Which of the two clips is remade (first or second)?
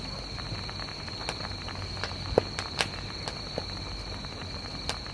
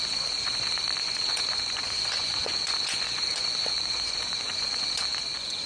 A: second